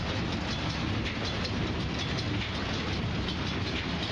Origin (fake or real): real